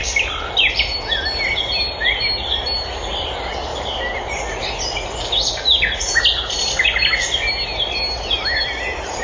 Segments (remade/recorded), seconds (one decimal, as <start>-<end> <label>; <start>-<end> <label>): 0.0-3.7 recorded; 3.7-4.3 remade; 4.3-9.2 recorded